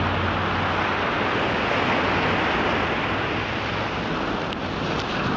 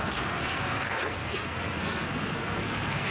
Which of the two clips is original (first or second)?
first